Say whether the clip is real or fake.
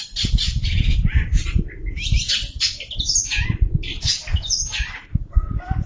fake